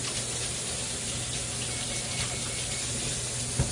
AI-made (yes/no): no